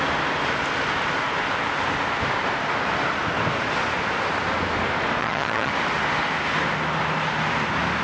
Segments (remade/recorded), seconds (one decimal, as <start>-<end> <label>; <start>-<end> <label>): 0.0-5.2 recorded; 5.2-5.7 remade; 5.7-8.0 recorded